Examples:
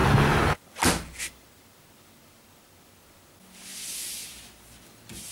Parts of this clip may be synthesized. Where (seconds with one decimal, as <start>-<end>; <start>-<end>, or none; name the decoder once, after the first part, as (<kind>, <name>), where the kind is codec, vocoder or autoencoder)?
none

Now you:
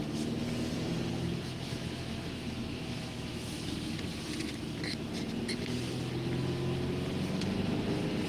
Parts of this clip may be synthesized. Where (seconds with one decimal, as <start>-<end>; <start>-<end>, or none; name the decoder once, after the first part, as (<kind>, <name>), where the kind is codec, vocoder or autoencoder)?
1.1-3.7 (autoencoder, DAC-VAE)

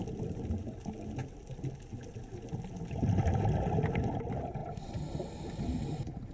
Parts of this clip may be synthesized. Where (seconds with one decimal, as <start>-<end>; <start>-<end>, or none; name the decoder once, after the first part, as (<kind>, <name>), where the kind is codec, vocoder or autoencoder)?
none

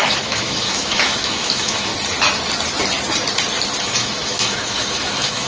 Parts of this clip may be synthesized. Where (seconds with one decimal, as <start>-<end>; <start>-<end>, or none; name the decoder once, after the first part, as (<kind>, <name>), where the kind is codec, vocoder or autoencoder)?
0.0-1.9 (autoencoder, DAC-VAE); 3.8-5.5

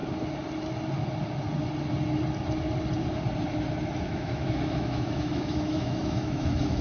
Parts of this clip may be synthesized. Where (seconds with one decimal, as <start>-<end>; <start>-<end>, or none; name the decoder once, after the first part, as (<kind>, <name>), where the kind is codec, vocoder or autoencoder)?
4.0-6.8 (autoencoder, DAC-VAE)